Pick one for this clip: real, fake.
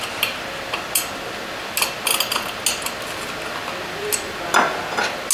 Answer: real